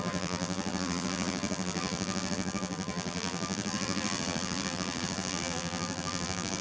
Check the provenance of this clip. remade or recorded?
remade